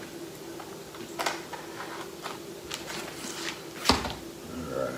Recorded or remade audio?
recorded